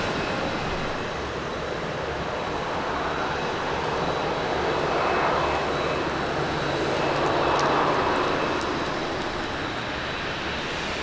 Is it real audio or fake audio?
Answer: real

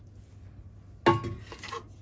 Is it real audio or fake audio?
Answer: real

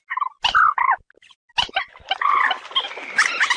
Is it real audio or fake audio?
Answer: real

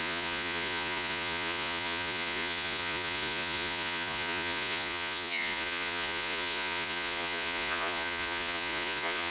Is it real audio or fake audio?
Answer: fake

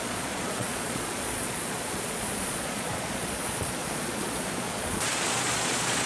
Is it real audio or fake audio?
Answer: fake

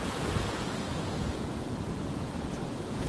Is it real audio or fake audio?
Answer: fake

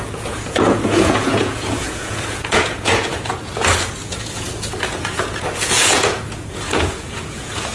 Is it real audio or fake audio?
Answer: fake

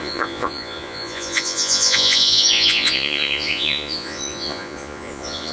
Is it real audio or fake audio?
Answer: fake